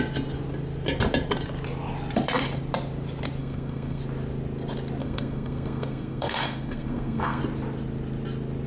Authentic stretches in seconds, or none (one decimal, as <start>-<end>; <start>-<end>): 0.0-3.4; 4.0-5.0; 7.4-8.7